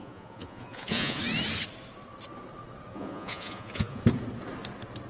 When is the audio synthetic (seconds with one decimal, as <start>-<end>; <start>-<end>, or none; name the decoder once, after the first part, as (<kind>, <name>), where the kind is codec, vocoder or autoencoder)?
0.0-1.2 (vocoder, Vocos); 2.9-4.0